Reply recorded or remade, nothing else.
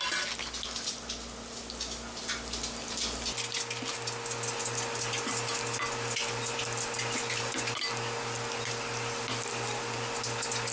recorded